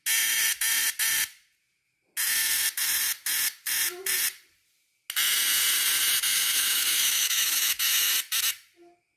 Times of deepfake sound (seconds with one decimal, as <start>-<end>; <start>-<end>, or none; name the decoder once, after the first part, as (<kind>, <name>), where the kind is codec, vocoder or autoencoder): 6.2-8.1 (autoencoder, DAC-VAE)

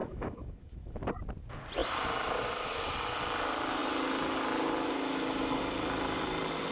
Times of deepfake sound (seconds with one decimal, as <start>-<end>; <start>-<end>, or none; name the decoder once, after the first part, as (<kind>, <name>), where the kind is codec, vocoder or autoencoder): 0.0-0.9 (autoencoder, DAC-VAE)

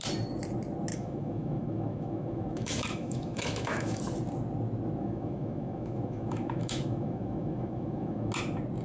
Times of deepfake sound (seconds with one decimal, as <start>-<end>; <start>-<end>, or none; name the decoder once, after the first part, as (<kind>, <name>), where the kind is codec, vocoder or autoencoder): 0.9-4.0 (autoencoder, DAC-VAE); 5.0-8.3

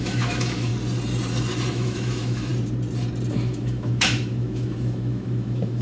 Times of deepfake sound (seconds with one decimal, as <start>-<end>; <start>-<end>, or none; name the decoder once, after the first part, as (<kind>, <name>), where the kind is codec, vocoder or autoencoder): 0.0-0.7 (autoencoder, DAC-VAE); 1.7-2.5; 3.3-5.8

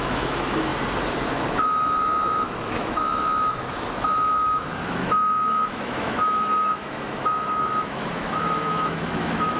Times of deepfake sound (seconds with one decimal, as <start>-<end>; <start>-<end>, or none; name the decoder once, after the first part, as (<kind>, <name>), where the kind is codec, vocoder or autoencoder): 0.0-0.7 (autoencoder, DAC-VAE); 1.3-9.6

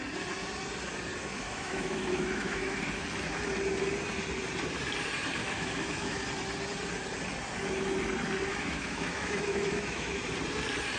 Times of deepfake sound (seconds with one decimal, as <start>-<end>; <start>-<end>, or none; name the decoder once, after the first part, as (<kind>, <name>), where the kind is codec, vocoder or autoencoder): 1.3-2.8 (autoencoder, DAC-VAE); 5.4-6.2; 8.5-10.2

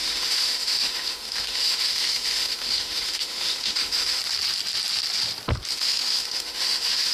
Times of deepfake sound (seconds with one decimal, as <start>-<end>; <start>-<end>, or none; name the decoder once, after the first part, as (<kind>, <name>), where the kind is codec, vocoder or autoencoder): 0.0-4.2 (autoencoder, DAC-VAE); 5.7-7.1